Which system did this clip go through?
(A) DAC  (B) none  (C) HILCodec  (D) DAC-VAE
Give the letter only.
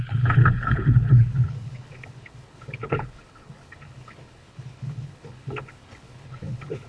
C